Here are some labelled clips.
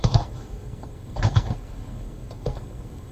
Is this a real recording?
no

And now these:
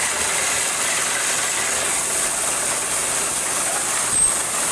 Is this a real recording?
yes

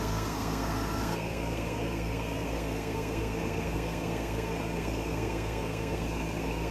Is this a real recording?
no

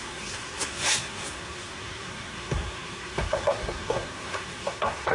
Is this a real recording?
no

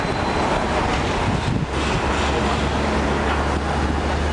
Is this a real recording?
yes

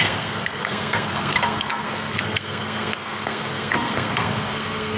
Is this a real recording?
no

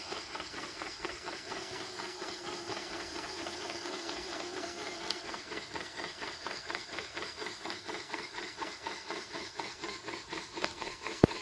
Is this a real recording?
no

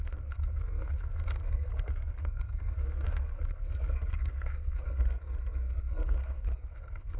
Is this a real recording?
no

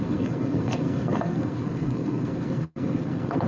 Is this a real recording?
no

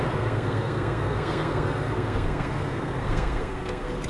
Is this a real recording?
no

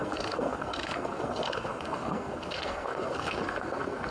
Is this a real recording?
no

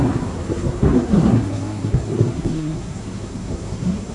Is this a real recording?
no